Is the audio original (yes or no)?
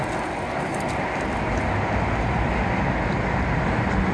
yes